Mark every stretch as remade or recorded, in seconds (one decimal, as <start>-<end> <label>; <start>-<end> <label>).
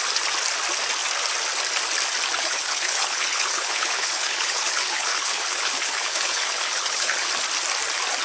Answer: 0.0-2.4 recorded; 2.4-7.3 remade; 7.3-8.2 recorded